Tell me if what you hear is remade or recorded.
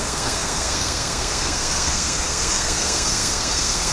remade